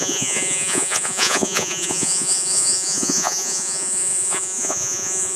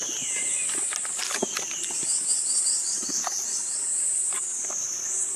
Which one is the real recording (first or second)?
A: second